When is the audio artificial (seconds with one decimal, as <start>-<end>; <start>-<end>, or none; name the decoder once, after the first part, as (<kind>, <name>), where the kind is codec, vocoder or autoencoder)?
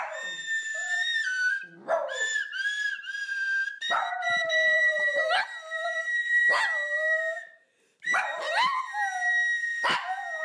0.7-5.2 (vocoder, BigVGAN v2); 5.8-6.4